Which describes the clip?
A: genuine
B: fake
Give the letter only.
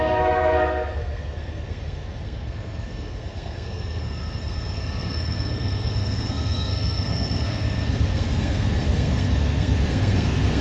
B